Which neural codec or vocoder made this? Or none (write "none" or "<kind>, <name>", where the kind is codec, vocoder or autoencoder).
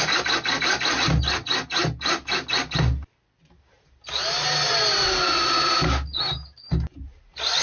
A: none